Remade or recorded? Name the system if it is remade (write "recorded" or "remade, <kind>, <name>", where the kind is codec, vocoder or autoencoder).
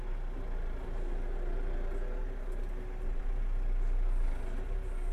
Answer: recorded